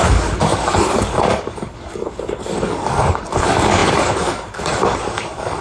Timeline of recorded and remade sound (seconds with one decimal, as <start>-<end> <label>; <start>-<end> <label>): 0.0-5.6 remade